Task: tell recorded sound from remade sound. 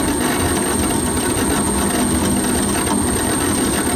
recorded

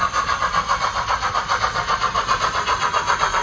recorded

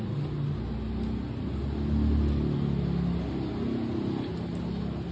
recorded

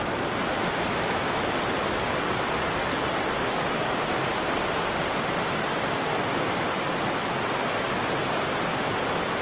recorded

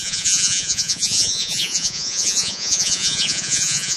remade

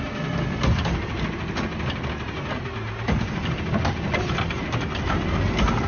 recorded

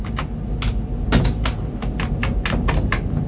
recorded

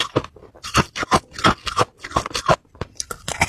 recorded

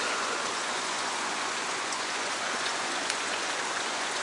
remade